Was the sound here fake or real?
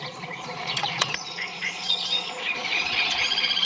fake